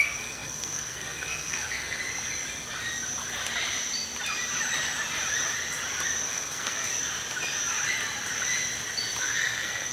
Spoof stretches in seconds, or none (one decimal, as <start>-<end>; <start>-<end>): 0.0-2.0; 6.2-6.9; 9.2-9.9